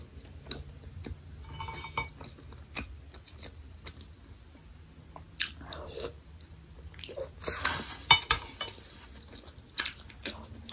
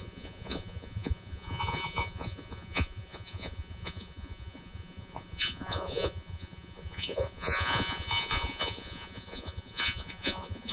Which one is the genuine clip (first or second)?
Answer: first